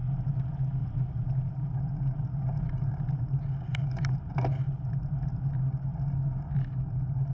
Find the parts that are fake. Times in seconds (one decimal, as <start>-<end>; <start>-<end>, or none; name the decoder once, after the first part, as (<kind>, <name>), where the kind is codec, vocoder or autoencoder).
0.8-4.9 (vocoder, BigVGAN v2)